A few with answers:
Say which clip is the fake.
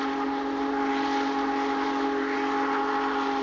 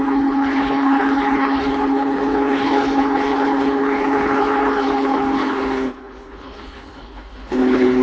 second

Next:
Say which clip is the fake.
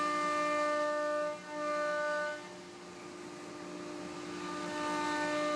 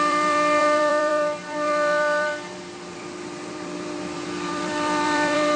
second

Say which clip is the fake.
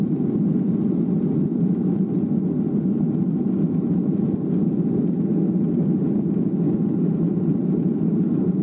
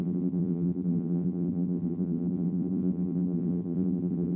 second